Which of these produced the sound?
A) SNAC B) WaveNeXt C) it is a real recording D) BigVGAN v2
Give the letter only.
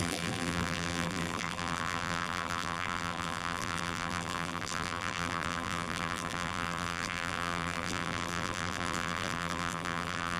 D